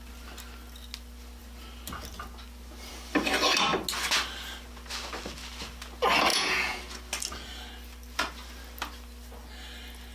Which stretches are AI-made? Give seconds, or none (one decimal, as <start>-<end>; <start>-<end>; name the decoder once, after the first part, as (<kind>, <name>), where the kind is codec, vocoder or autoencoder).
6.3-6.8 (vocoder, Vocos)

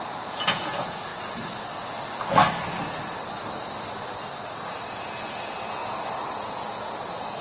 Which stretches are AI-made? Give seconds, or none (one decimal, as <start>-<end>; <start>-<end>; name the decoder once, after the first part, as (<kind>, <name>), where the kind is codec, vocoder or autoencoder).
0.0-1.1 (vocoder, Vocos); 4.9-5.8; 6.4-7.4